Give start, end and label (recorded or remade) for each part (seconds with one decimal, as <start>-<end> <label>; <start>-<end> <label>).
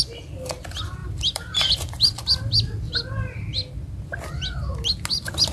0.0-1.0 recorded; 1.0-4.3 remade; 4.3-5.5 recorded